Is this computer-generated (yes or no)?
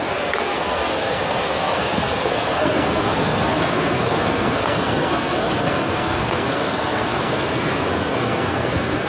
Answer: yes